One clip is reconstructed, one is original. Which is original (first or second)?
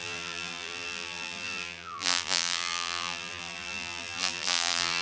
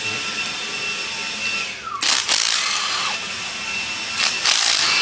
second